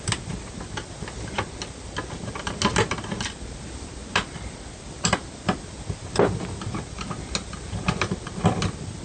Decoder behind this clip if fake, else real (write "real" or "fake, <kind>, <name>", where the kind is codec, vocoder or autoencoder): real